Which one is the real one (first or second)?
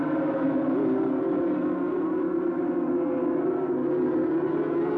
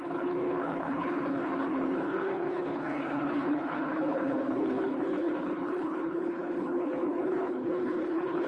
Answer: first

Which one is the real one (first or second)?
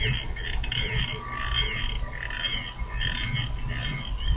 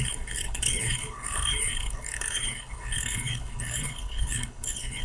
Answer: first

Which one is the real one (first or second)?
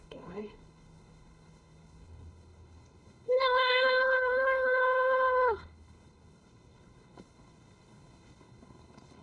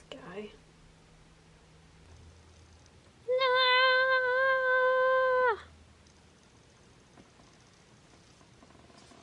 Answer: second